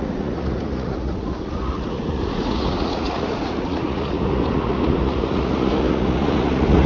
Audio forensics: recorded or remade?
remade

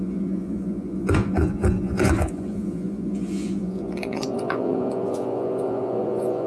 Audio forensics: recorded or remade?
remade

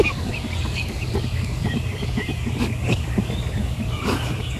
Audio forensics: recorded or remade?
remade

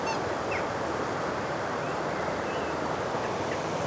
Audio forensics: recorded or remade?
recorded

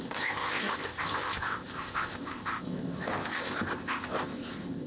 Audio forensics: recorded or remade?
remade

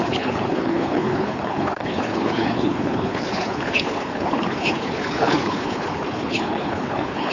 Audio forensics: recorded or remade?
remade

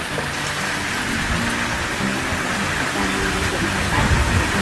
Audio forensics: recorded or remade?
recorded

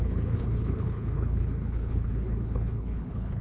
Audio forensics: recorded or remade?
remade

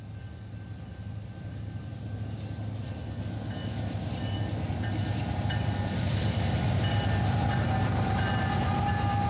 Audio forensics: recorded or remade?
recorded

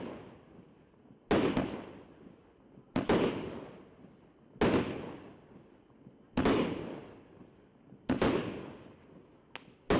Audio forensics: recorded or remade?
recorded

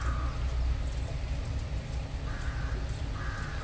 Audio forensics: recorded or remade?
recorded